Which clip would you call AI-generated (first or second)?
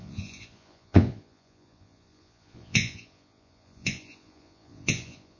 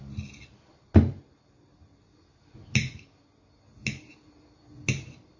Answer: first